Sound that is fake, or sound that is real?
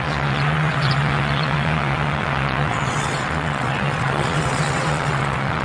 fake